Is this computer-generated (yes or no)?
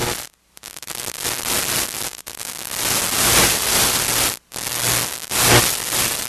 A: no